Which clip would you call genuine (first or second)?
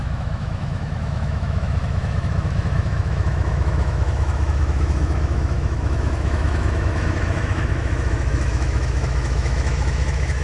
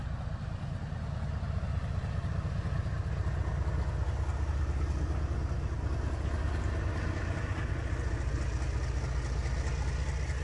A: second